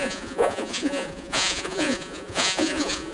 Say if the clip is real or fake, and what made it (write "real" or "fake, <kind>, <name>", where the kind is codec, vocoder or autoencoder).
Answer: fake, vocoder, Vocos